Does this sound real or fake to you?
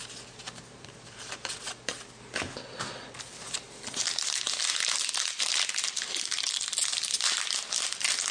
real